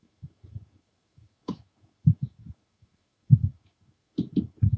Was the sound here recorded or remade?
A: remade